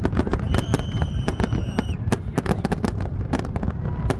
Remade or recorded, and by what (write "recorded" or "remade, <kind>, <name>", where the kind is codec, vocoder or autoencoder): remade, vocoder, BigVGAN v2